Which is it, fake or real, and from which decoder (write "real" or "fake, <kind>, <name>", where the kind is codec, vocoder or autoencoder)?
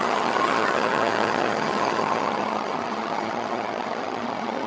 fake, vocoder, HiFi-GAN